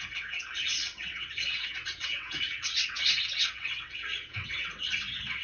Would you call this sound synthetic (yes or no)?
yes